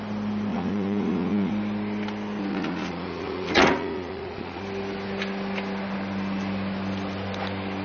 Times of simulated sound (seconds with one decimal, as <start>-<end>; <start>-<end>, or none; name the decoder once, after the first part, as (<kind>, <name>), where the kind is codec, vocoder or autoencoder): 0.5-1.5 (vocoder, Vocos); 2.5-4.6